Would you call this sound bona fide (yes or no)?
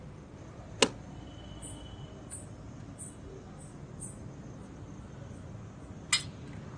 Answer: yes